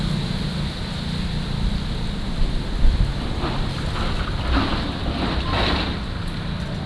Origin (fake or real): real